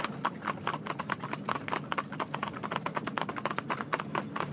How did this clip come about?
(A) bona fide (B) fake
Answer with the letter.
A